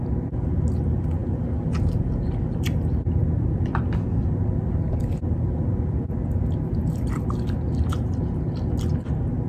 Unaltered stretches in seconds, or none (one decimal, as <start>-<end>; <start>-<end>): 0.0-9.5

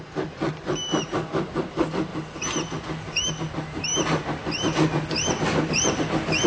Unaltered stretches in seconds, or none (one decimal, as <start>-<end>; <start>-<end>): 0.0-6.5

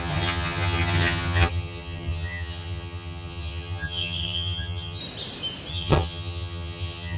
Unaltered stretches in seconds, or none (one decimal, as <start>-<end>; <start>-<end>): 5.0-5.7

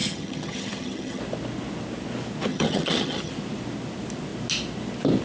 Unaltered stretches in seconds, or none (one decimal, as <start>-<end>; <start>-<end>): 1.2-2.5; 3.3-5.2

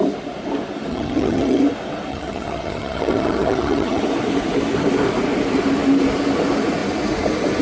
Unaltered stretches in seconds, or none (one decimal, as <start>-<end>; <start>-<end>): 0.0-0.9; 1.6-2.1; 4.0-7.6

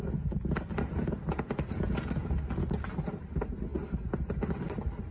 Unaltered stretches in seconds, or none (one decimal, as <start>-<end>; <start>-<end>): 0.0-5.1

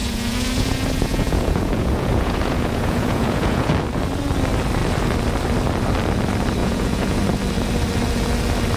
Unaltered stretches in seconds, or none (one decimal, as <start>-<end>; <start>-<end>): 3.7-6.6; 7.2-8.8